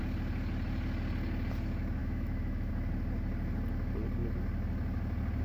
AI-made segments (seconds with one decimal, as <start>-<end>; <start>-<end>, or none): 2.0-2.7